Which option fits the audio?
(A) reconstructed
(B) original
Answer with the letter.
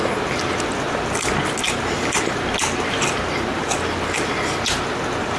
B